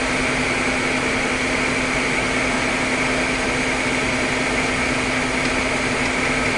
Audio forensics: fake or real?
real